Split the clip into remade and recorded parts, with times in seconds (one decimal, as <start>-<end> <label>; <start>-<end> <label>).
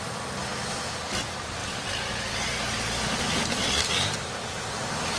0.0-5.2 recorded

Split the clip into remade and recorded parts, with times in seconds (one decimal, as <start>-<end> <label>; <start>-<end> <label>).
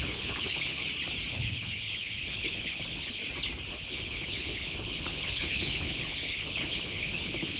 0.0-0.8 remade; 0.8-1.3 recorded; 1.3-3.2 remade; 3.2-3.7 recorded; 3.7-7.6 remade